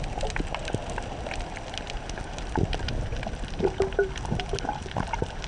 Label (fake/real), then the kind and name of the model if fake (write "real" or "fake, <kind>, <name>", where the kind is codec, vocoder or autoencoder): real